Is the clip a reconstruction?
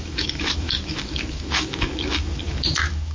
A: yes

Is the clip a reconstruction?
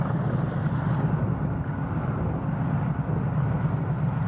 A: no